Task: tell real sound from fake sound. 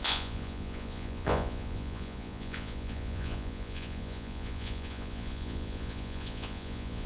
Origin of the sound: fake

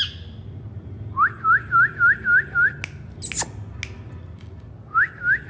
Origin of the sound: real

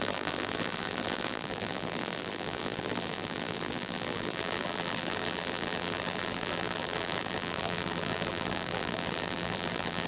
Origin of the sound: fake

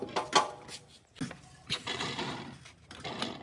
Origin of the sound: real